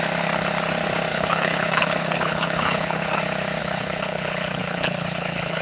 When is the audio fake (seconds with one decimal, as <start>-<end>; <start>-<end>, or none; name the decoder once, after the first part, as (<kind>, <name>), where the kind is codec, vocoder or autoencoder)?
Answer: 1.1-3.2 (codec, HILCodec); 3.6-5.6